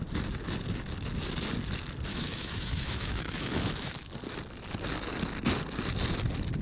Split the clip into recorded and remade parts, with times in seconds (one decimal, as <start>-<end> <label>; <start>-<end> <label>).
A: 0.0-2.1 recorded; 2.1-4.1 remade; 4.1-6.6 recorded